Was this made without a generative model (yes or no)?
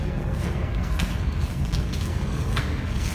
no